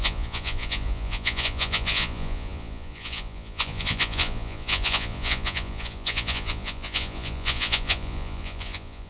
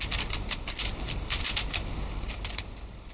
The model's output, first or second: first